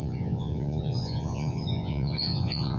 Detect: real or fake fake